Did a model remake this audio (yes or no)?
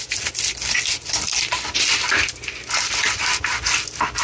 no